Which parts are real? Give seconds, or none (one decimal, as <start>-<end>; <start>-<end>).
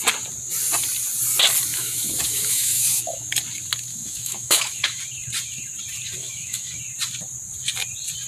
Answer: 0.0-1.7; 3.3-3.9; 5.0-6.2; 6.8-8.3